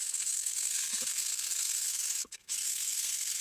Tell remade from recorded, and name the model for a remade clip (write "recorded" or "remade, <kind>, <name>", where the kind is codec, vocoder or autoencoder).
remade, codec, SNAC